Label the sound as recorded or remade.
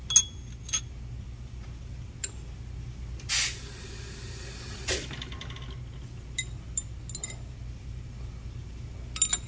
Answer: recorded